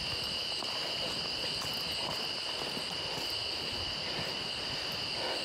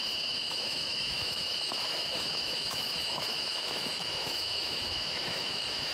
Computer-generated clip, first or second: second